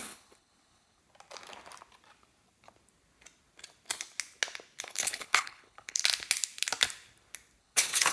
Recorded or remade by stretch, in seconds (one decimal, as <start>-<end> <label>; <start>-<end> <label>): 0.0-1.0 remade; 1.0-4.8 recorded; 4.8-6.0 remade; 6.0-7.6 recorded; 7.6-8.1 remade